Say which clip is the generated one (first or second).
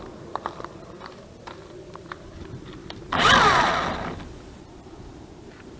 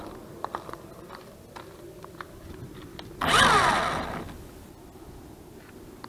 first